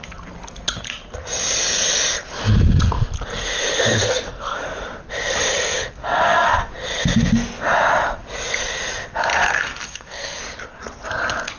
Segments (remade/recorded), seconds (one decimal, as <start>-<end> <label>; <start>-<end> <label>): 0.0-3.9 recorded; 3.9-4.6 remade; 4.6-6.0 recorded; 6.0-6.7 remade; 6.7-9.3 recorded; 9.3-10.4 remade; 10.4-11.6 recorded